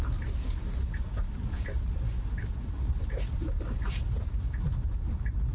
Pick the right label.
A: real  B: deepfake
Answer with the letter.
A